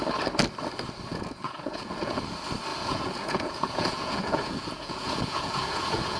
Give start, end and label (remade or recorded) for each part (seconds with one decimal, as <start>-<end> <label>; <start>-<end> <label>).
0.0-1.1 recorded; 1.1-2.2 remade; 2.2-2.7 recorded; 2.7-6.2 remade